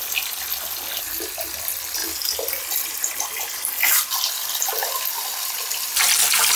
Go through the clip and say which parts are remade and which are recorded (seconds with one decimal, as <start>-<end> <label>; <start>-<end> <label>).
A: 0.0-6.6 recorded